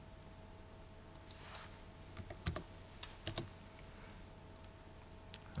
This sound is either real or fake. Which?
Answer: real